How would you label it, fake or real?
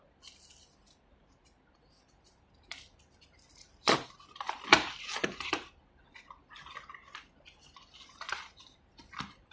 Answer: fake